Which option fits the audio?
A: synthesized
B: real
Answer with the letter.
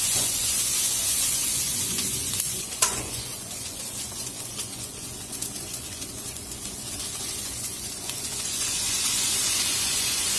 A